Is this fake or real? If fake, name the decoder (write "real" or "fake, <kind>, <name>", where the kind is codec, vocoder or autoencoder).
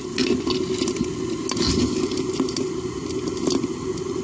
real